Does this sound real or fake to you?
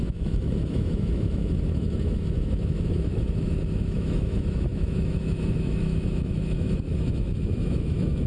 fake